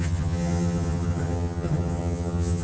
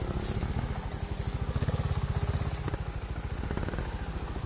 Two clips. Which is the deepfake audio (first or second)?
first